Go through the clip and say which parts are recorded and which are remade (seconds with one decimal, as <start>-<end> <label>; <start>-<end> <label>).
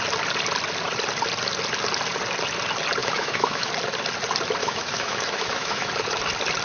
0.0-3.0 recorded; 3.0-3.7 remade; 3.7-4.6 recorded; 4.6-5.9 remade; 5.9-6.6 recorded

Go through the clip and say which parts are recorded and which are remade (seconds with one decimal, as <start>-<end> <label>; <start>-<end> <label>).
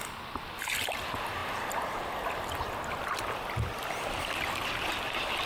0.0-5.5 recorded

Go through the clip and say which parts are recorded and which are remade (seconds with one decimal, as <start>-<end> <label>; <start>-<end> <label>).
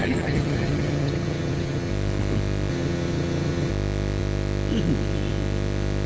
0.0-1.9 remade; 1.9-2.7 recorded; 2.7-3.7 remade; 3.7-6.1 recorded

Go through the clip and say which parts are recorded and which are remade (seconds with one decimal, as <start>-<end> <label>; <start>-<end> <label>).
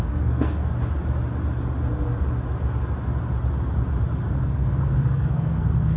0.0-0.7 remade; 0.7-4.3 recorded; 4.3-6.0 remade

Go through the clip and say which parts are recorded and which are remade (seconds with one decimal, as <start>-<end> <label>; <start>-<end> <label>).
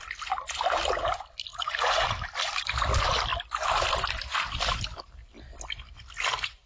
0.0-1.5 recorded; 1.5-2.1 remade; 2.1-6.7 recorded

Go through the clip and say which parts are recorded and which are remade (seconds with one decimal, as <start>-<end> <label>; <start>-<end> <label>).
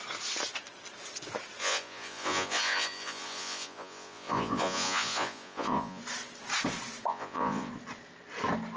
0.0-1.6 recorded; 1.6-6.0 remade; 6.0-7.1 recorded; 7.1-7.7 remade; 7.7-8.8 recorded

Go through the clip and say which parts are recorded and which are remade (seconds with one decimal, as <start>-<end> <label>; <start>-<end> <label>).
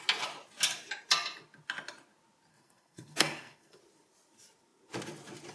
0.0-2.5 recorded; 2.5-3.8 remade; 3.8-5.5 recorded